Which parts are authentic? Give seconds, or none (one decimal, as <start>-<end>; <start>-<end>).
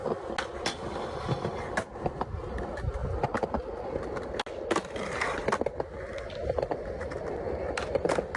0.0-8.4